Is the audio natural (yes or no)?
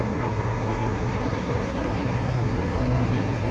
no